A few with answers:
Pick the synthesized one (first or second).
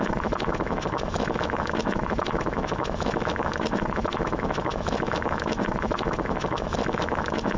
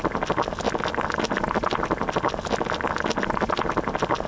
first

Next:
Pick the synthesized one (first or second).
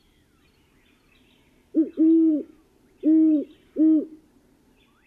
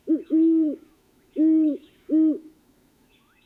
second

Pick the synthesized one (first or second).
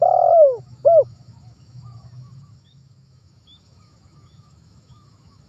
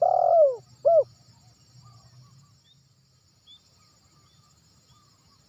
first